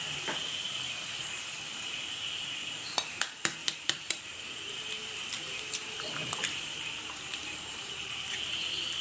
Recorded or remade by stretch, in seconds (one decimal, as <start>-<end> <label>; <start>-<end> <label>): 0.0-1.7 recorded; 1.7-2.5 remade; 2.5-3.6 recorded; 3.6-4.2 remade; 4.2-5.8 recorded; 5.8-8.4 remade; 8.4-9.0 recorded